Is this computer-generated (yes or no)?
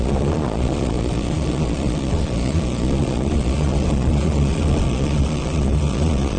yes